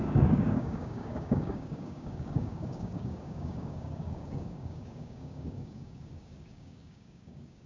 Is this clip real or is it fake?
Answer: fake